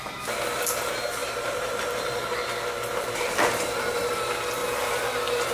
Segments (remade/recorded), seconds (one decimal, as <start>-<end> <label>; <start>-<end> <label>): 0.0-1.2 recorded; 1.2-1.8 remade; 1.8-2.9 recorded; 2.9-4.1 remade; 4.1-5.5 recorded